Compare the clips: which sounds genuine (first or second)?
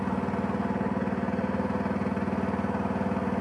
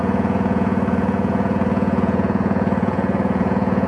first